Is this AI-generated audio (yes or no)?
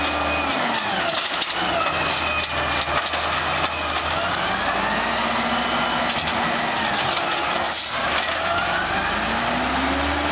no